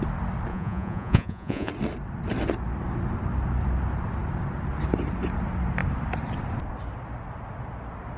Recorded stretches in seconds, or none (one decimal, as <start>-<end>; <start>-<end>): 0.0-0.5; 1.7-8.2